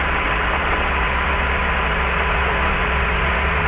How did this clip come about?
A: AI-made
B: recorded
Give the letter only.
A